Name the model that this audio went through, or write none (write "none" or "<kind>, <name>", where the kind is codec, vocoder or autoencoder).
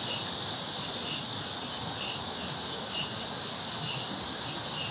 none